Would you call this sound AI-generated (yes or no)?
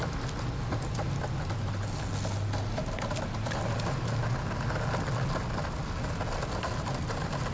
no